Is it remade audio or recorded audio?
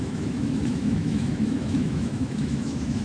remade